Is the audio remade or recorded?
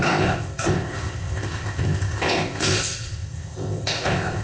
remade